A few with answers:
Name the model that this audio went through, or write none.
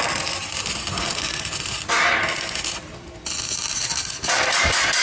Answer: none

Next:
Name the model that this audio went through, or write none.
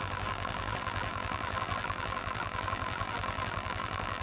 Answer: vocoder, BigVGAN v2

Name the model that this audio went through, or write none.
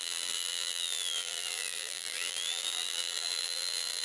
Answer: vocoder, BigVGAN v2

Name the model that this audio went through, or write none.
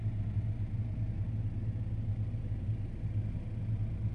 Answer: none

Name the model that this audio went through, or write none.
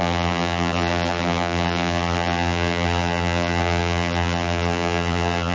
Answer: vocoder, BigVGAN v2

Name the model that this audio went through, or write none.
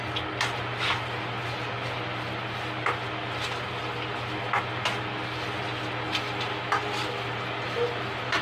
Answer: none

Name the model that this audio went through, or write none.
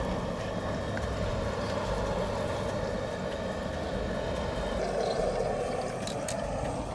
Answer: none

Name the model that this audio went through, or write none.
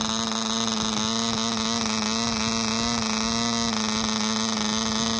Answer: none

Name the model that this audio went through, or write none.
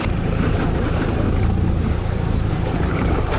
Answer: vocoder, BigVGAN v2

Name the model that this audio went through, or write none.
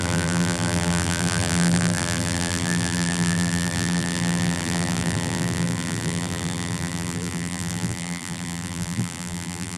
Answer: vocoder, BigVGAN v2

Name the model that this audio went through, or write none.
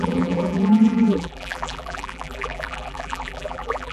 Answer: vocoder, BigVGAN v2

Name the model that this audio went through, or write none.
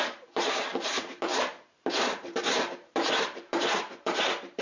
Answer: vocoder, BigVGAN v2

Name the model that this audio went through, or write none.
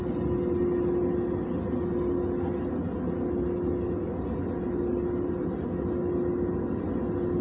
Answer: none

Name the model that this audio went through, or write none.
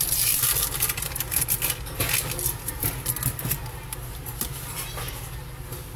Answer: none